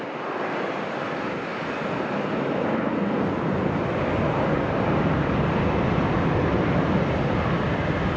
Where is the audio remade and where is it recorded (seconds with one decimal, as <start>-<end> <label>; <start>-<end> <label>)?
0.0-8.2 recorded